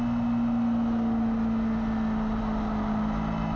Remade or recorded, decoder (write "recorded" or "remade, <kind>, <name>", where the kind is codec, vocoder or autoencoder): recorded